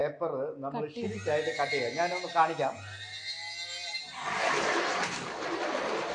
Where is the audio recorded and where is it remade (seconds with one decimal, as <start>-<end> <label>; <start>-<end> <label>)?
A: 0.0-6.1 recorded